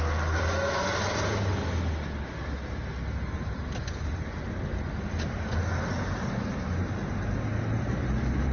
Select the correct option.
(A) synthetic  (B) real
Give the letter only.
B